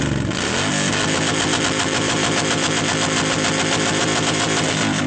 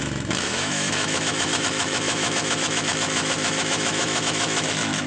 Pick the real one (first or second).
first